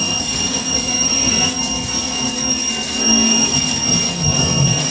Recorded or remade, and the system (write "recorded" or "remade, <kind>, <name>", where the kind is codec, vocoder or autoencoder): remade, codec, SNAC